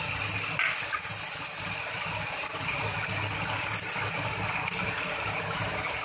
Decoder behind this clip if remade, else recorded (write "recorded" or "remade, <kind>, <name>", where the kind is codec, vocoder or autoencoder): recorded